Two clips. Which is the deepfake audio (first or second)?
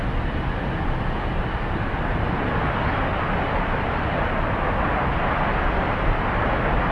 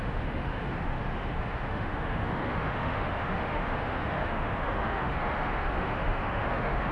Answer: second